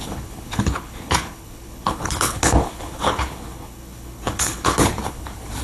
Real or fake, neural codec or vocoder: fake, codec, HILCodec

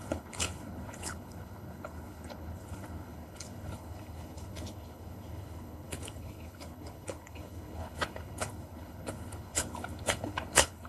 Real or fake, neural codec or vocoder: fake, codec, HILCodec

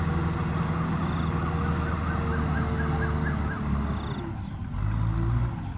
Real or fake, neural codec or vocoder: real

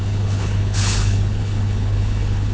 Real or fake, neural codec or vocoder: fake, codec, HILCodec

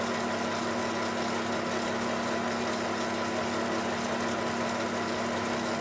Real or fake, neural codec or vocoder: real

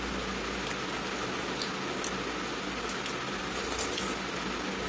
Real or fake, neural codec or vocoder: real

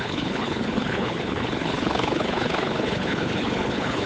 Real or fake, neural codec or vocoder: fake, codec, HILCodec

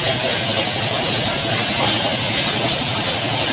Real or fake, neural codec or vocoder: real